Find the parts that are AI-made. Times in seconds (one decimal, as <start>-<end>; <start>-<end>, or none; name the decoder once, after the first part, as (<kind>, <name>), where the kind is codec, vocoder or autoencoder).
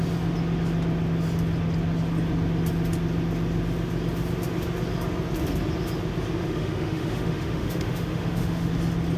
6.4-8.7 (autoencoder, DAC-VAE)